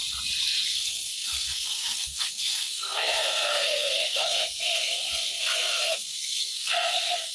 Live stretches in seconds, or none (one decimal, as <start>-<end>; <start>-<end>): 0.0-0.7